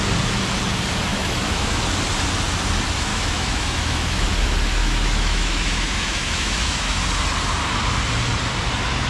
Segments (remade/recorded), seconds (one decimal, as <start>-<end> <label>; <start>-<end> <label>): 0.0-1.1 recorded; 1.1-1.8 remade; 1.8-3.1 recorded; 3.1-4.3 remade; 4.3-4.8 recorded; 4.8-7.0 remade; 7.0-9.1 recorded

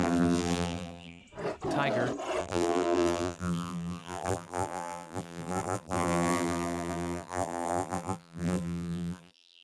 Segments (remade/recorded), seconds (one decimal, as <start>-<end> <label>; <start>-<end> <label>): 0.0-1.2 remade; 1.2-2.4 recorded; 2.4-9.6 remade

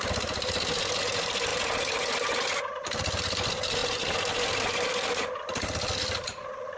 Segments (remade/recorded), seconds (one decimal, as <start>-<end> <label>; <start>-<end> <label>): 0.0-6.8 recorded